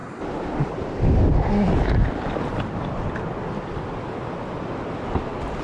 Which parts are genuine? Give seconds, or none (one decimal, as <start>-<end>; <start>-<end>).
1.0-5.6